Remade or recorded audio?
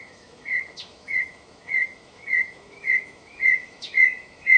remade